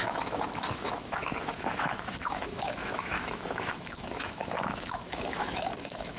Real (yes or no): no